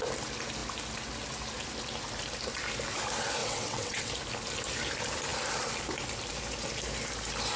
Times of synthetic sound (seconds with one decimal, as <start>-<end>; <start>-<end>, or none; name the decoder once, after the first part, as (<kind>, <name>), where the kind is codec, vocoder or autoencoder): 3.4-4.1 (vocoder, WaveNeXt)